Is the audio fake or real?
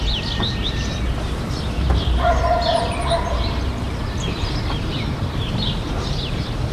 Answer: fake